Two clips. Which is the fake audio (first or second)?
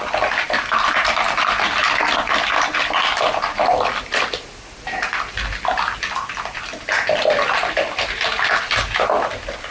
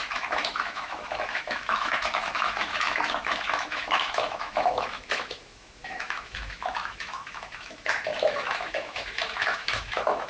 second